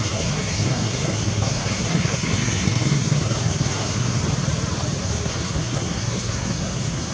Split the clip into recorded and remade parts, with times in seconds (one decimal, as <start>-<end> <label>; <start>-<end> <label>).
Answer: 0.0-4.2 remade; 4.2-5.0 recorded; 5.0-7.1 remade